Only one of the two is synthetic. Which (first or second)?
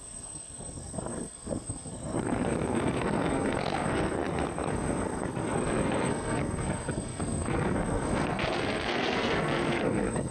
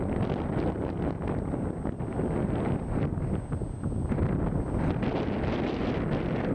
first